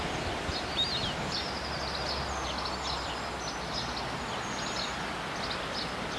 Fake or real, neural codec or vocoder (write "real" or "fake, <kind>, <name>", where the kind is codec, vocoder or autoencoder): real